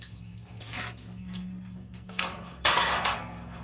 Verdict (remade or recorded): remade